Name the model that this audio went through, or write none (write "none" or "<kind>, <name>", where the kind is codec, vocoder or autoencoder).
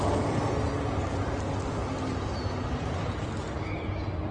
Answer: none